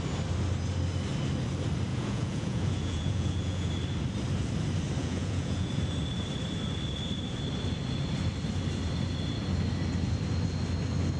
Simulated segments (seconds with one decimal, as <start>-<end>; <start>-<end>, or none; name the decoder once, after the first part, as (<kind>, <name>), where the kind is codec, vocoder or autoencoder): 1.9-3.7 (vocoder, Vocos); 5.0-5.7